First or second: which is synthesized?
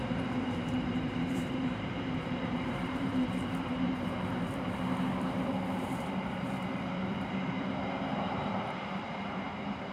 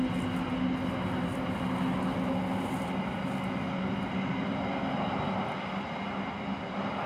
first